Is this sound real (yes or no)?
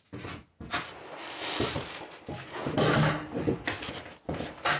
yes